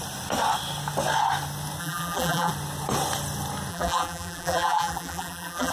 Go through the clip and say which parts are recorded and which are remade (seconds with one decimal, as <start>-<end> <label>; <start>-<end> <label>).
0.0-1.8 recorded; 1.8-2.5 remade; 2.5-3.7 recorded; 3.7-5.7 remade